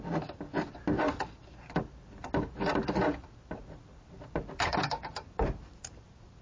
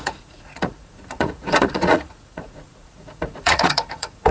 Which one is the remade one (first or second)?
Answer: second